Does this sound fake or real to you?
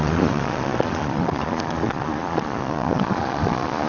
fake